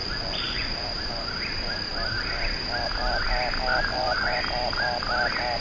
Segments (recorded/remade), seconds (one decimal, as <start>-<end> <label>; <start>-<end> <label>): 0.0-0.7 remade; 0.7-3.9 recorded; 3.9-4.4 remade; 4.4-5.6 recorded